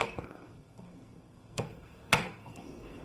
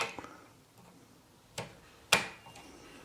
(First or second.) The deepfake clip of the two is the first